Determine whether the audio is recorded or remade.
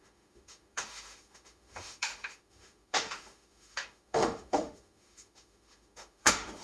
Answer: remade